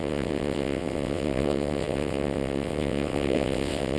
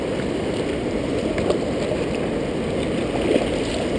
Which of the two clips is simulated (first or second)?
first